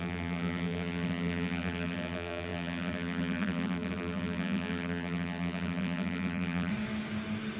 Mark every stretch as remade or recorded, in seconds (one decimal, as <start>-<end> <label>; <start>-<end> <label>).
0.0-6.7 remade; 6.7-7.6 recorded